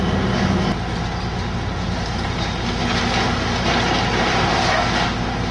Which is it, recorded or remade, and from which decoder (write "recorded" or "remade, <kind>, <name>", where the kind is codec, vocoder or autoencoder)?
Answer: recorded